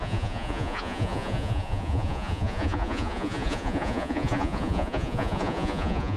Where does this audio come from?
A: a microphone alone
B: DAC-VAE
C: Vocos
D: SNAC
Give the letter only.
C